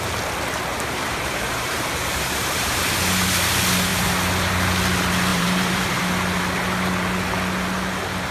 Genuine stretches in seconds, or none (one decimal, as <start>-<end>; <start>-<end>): 0.0-0.7; 2.8-5.3; 6.0-8.3